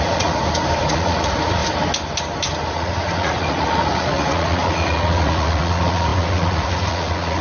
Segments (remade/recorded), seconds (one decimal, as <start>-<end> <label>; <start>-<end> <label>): 0.0-0.4 remade; 0.4-0.9 recorded; 0.9-1.6 remade; 1.6-2.7 recorded; 2.7-7.4 remade